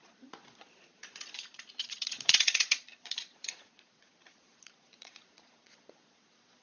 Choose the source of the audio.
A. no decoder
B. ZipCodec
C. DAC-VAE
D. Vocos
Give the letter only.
D